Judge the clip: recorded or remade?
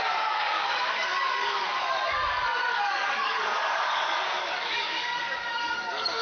remade